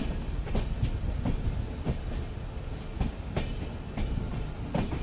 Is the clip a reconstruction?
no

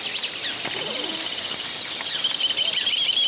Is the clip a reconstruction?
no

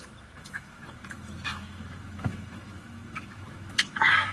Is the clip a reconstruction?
yes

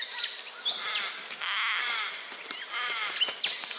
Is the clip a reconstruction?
no